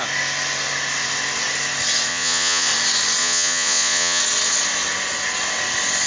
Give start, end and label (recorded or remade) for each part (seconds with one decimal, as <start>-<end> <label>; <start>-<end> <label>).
0.0-2.1 recorded; 2.1-2.7 remade; 2.7-3.2 recorded; 3.2-4.2 remade; 4.2-6.1 recorded